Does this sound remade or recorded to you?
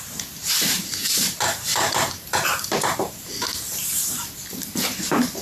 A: remade